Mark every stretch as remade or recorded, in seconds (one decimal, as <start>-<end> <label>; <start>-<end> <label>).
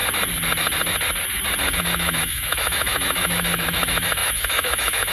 0.0-1.8 recorded; 1.8-5.1 remade